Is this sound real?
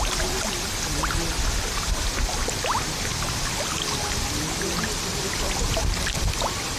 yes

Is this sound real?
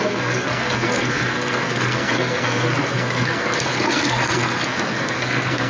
no